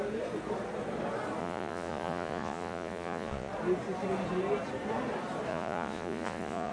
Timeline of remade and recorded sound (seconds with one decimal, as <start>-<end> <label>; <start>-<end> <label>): 0.0-1.4 recorded; 1.4-3.5 remade; 3.5-5.5 recorded; 5.5-6.7 remade